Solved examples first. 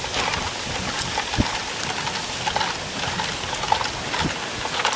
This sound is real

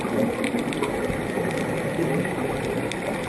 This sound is real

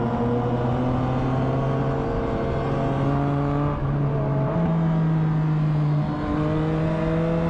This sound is real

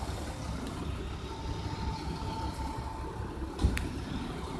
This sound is real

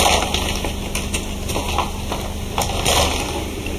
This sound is real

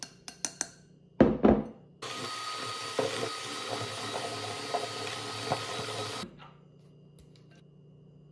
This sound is real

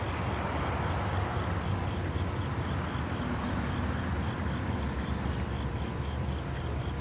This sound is real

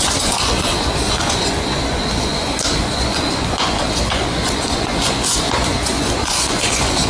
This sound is fake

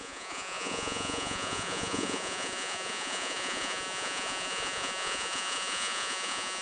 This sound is fake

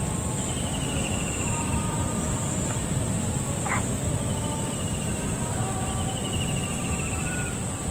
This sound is real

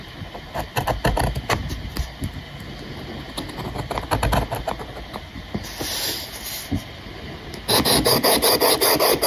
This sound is real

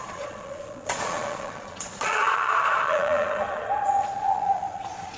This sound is fake